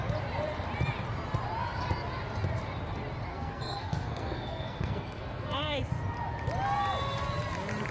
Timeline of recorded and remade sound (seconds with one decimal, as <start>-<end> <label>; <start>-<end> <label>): 0.0-3.3 recorded; 3.3-5.9 remade; 5.9-7.9 recorded